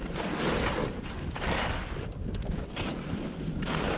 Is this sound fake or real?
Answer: real